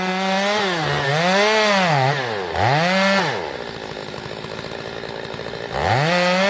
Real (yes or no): yes